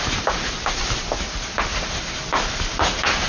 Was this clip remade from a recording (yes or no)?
no